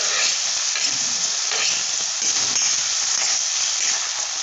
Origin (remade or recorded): recorded